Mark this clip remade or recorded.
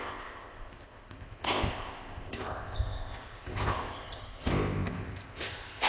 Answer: remade